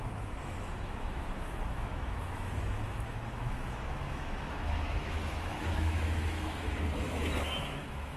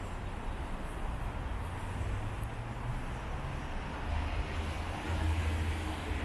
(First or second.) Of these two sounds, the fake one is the first